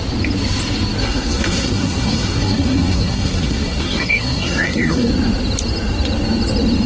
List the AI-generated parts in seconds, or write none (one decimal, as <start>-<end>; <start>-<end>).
1.0-5.1

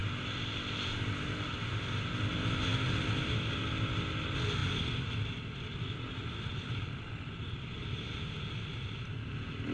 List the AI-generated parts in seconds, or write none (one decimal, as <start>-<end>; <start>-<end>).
none

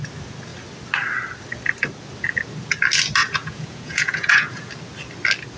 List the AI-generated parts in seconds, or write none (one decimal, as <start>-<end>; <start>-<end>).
3.2-4.7

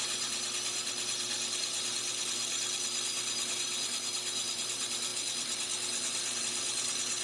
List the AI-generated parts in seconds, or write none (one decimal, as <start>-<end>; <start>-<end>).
none